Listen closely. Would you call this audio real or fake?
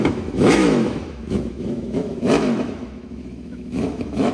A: fake